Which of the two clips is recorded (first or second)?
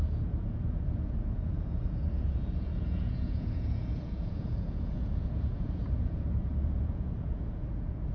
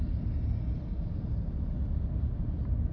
second